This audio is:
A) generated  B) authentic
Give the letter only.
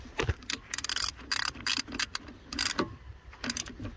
B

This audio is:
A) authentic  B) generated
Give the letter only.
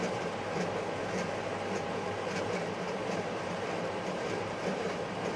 B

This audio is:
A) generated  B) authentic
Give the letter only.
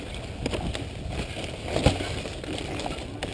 B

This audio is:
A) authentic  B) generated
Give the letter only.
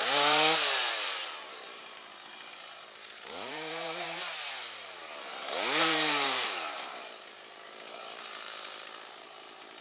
B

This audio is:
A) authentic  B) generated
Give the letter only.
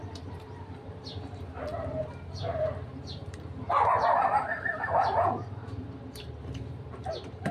B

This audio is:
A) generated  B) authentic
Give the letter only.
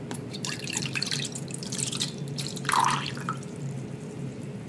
A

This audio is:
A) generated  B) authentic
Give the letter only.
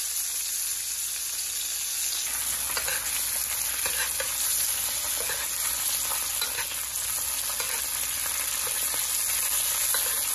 B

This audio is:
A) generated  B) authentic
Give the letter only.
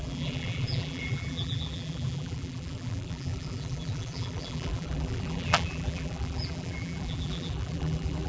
A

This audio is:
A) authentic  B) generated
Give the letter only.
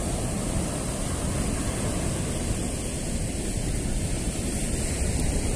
A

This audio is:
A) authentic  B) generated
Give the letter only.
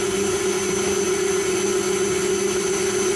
A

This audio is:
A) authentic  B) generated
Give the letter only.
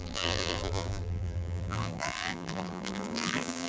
B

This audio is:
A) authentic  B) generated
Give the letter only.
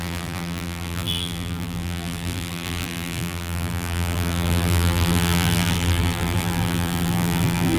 B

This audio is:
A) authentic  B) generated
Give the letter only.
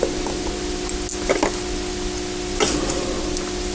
A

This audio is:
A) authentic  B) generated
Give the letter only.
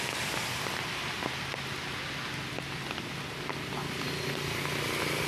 A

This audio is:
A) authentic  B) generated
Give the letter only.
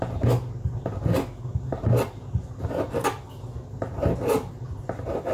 A